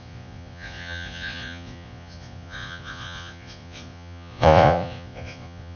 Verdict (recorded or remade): remade